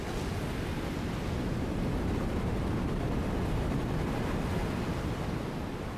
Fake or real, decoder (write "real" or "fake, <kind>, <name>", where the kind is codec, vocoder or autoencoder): real